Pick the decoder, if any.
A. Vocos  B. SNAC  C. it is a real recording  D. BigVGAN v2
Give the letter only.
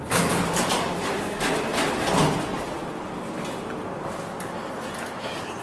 C